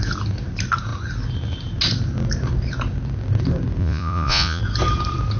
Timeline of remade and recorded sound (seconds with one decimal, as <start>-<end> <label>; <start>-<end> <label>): 0.0-3.8 recorded; 3.8-4.6 remade; 4.6-5.4 recorded